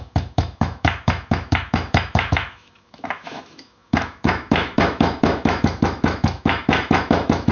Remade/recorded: remade